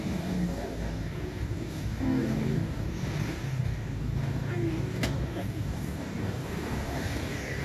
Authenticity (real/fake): fake